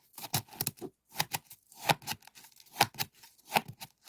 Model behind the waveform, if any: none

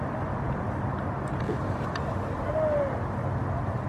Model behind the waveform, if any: none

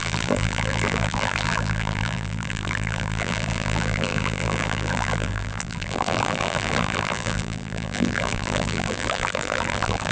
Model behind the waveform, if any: vocoder, BigVGAN v2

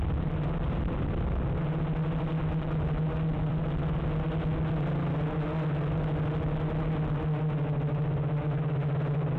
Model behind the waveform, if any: none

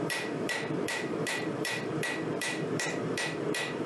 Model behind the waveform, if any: vocoder, BigVGAN v2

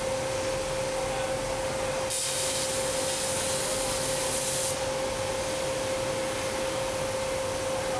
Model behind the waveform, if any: none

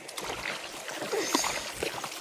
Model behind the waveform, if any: none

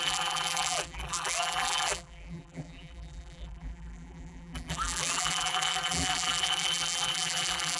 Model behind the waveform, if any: vocoder, BigVGAN v2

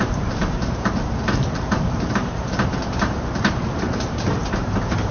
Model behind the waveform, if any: vocoder, BigVGAN v2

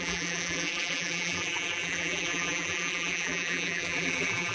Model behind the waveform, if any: vocoder, BigVGAN v2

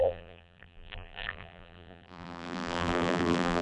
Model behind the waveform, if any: vocoder, BigVGAN v2